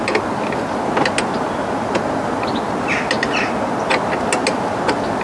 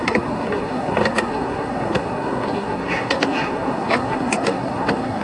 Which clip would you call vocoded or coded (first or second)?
second